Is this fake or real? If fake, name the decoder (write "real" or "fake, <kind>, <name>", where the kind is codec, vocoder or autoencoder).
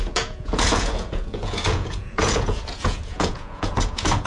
fake, vocoder, Vocos